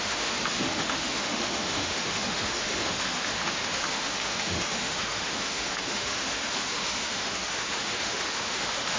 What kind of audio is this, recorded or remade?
remade